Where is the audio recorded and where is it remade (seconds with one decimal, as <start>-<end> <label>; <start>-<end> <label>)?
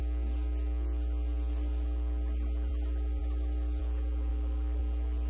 0.0-4.3 recorded; 4.3-4.8 remade; 4.8-5.3 recorded